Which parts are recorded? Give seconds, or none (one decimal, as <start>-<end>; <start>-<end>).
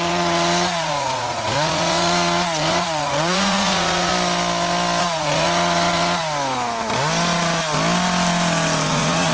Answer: 4.1-5.0; 6.2-8.9